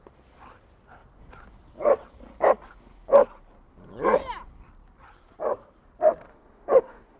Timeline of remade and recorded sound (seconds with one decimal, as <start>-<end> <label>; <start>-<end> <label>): 0.0-6.3 recorded; 6.3-7.2 remade